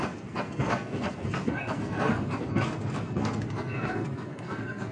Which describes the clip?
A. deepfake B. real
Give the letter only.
A